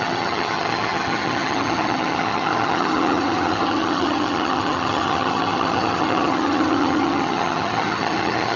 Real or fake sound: fake